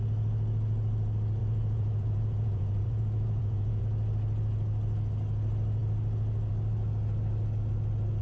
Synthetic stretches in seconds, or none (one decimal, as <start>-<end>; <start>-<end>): 1.4-3.8